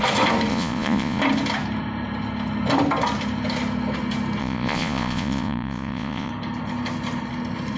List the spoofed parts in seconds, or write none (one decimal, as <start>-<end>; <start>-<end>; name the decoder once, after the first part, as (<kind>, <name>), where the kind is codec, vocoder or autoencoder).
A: 0.5-1.2 (vocoder, Vocos); 4.4-6.3